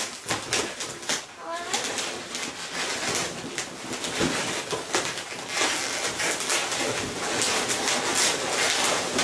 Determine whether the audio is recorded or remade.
recorded